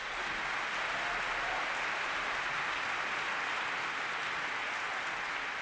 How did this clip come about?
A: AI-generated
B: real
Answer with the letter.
B